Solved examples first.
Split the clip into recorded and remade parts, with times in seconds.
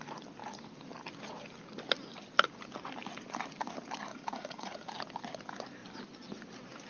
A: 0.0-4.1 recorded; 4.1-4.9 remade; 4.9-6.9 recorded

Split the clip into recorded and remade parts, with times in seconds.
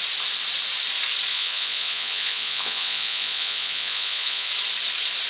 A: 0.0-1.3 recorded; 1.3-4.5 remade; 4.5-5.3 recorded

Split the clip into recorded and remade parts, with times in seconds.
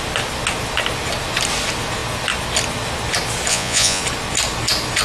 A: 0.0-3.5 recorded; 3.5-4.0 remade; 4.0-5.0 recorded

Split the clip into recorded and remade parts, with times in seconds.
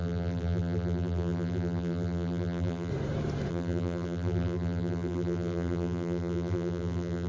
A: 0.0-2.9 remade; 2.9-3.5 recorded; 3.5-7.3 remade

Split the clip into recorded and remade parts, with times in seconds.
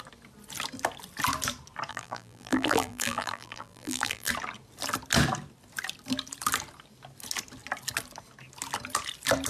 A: 0.0-1.9 recorded; 1.9-4.3 remade; 4.3-9.5 recorded